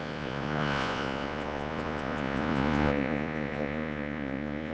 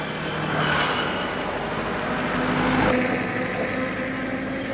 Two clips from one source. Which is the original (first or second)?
second